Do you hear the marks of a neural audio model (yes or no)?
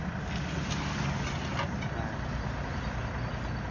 no